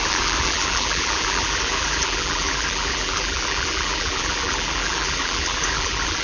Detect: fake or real fake